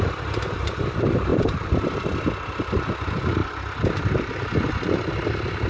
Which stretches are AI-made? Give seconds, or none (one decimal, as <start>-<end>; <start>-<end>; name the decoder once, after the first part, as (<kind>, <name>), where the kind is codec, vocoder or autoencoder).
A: 1.3-2.3 (vocoder, BigVGAN v2)